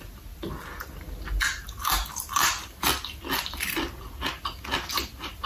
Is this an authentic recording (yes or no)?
yes